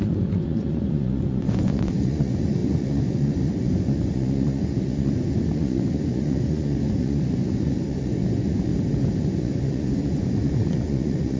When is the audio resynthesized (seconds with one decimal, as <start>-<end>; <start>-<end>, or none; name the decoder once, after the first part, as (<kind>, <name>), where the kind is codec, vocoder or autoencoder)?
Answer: 0.0-8.7 (vocoder, Vocos); 9.2-11.4